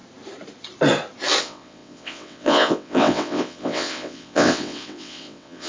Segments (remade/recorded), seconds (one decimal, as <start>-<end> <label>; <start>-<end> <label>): 0.0-1.4 recorded; 1.4-5.7 remade